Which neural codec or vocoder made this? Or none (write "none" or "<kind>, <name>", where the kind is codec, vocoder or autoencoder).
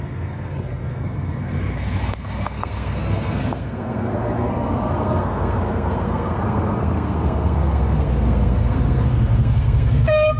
codec, SNAC